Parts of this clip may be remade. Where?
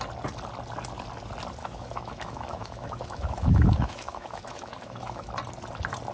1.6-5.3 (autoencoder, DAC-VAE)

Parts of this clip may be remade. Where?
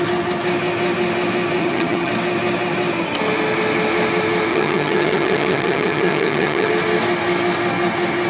1.6-2.1 (vocoder, HiFi-GAN); 4.5-6.7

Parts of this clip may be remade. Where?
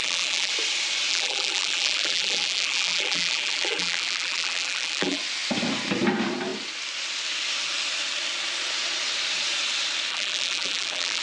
0.0-0.5 (vocoder, BigVGAN v2); 1.1-5.2; 10.1-11.2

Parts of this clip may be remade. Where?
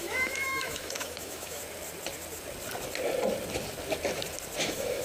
0.0-1.6 (autoencoder, DAC-VAE); 4.6-5.0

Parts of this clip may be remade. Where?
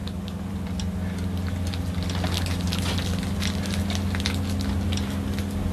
none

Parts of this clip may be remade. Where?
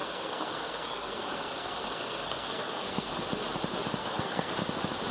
0.0-3.1 (codec, SNAC); 4.0-4.5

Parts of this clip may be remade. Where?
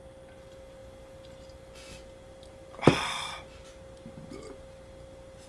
none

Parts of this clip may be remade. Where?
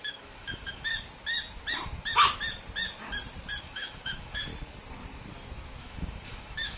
0.0-0.9 (autoencoder, DAC-VAE); 3.6-4.5; 5.8-6.8